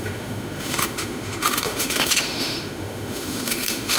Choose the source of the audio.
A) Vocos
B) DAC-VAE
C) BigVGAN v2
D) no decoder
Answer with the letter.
B